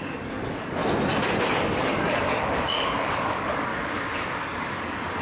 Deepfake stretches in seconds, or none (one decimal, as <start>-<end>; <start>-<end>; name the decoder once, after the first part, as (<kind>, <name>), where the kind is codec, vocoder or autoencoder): 0.0-0.8 (codec, DAC); 1.8-3.7; 4.4-5.2